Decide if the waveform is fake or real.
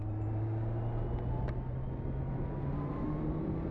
real